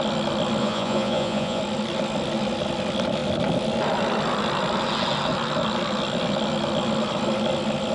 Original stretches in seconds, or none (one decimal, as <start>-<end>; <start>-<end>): 0.0-0.6; 1.6-7.9